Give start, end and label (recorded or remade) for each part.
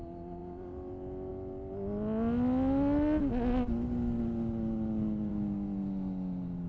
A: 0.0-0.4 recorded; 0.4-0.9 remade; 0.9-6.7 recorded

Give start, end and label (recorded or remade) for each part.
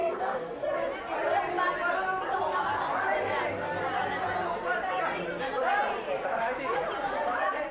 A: 0.0-0.6 remade; 0.6-7.7 recorded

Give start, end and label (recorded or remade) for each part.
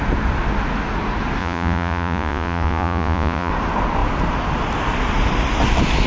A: 0.0-1.4 recorded; 1.4-3.5 remade; 3.5-6.1 recorded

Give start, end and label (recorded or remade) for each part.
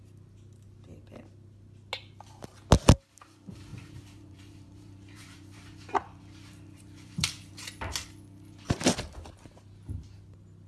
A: 0.0-3.7 recorded; 3.7-7.5 remade; 7.5-10.7 recorded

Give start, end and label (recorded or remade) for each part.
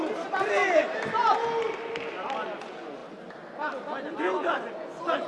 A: 0.0-5.3 recorded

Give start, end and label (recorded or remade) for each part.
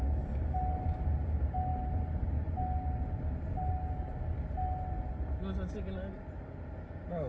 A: 0.0-7.3 recorded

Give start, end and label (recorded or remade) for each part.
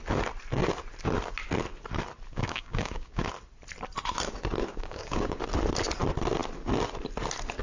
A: 0.0-2.3 recorded; 2.3-3.2 remade; 3.2-4.7 recorded; 4.7-5.4 remade; 5.4-7.6 recorded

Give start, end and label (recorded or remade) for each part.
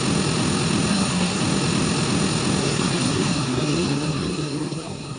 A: 0.0-0.9 recorded; 0.9-1.4 remade; 1.4-2.6 recorded; 2.6-5.2 remade